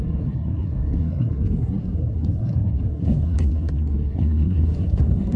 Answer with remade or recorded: remade